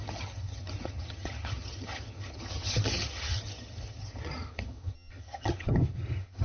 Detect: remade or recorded remade